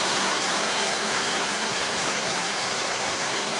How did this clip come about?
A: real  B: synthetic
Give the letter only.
B